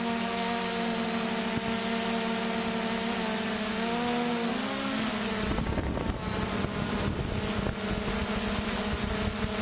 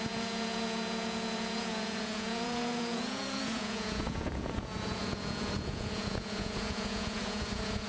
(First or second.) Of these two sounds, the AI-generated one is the second